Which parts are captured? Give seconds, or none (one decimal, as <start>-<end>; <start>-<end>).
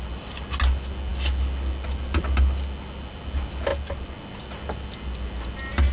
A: 0.0-5.9